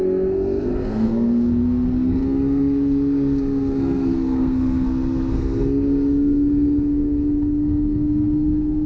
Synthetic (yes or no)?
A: yes